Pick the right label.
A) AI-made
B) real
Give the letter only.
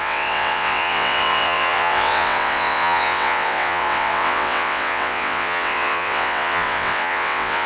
A